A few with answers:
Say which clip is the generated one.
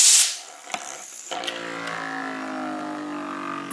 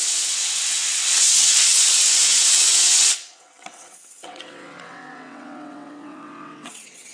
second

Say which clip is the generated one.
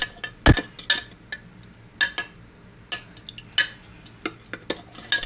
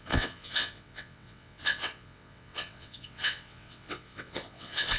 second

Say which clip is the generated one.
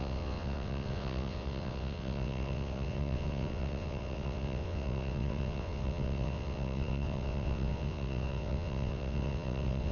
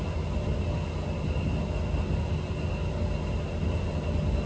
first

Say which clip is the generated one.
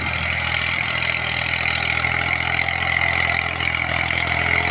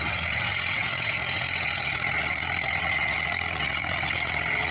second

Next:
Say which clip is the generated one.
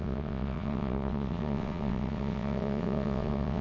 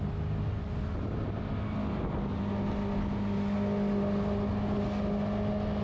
first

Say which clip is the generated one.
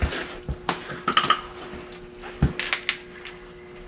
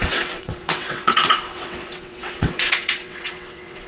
second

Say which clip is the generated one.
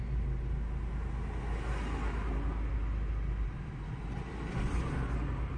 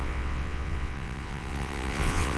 second